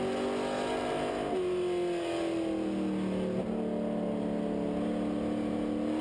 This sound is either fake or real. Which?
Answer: real